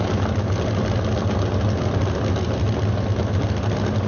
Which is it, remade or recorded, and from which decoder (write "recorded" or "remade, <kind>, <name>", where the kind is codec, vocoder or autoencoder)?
recorded